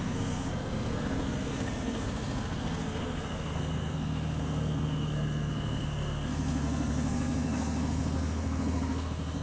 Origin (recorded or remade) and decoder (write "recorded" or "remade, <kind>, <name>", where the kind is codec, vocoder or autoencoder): remade, codec, SNAC